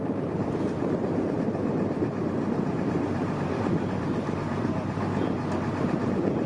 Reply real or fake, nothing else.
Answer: fake